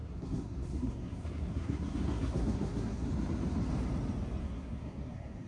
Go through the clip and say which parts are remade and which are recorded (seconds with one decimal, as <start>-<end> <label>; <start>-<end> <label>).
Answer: 0.0-3.1 remade; 3.1-4.4 recorded; 4.4-5.5 remade